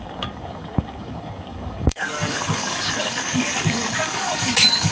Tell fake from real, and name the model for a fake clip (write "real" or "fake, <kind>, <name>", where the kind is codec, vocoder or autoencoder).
fake, codec, DAC